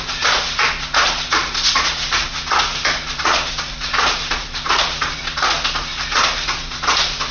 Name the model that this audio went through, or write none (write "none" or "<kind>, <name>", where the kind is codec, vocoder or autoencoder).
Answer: vocoder, Vocos